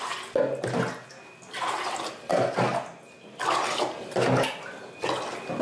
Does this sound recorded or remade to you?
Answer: recorded